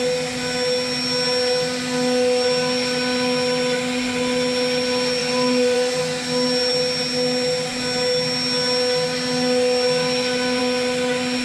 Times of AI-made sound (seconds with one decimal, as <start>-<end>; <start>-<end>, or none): 5.2-6.0